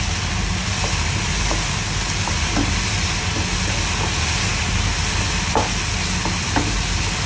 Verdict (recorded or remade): recorded